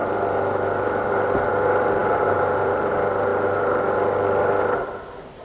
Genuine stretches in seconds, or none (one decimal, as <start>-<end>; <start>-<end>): 0.0-2.0; 2.9-5.4

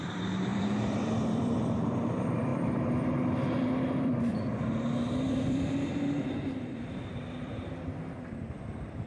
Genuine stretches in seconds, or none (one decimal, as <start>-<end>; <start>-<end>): none

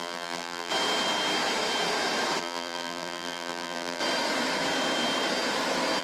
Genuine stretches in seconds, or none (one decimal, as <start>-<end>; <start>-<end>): 0.7-2.4; 4.0-6.0

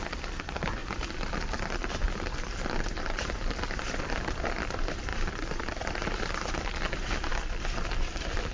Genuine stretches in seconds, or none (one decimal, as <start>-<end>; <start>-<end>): 0.8-4.0

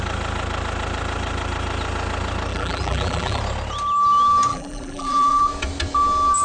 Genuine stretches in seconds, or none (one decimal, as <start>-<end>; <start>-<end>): 0.0-2.5; 3.4-4.5; 5.4-6.4

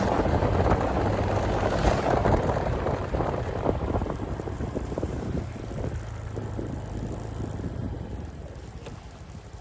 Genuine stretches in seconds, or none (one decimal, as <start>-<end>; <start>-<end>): 0.0-2.2; 5.7-7.8; 8.6-9.6

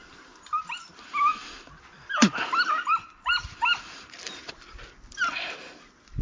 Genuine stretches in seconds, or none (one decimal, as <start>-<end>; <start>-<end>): 0.0-1.3; 4.5-6.2

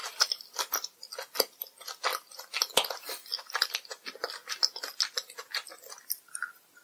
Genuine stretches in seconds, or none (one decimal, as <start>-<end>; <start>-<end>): 0.7-6.8